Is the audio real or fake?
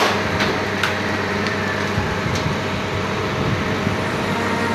fake